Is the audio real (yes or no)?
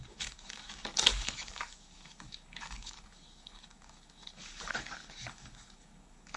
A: no